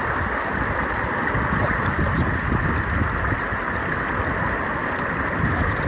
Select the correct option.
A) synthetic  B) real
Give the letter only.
B